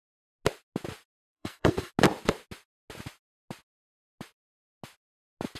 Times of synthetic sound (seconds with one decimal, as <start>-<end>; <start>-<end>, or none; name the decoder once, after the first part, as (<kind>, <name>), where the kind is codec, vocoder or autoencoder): 1.2-1.9 (codec, SNAC)